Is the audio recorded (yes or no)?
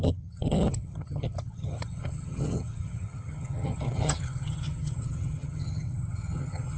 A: no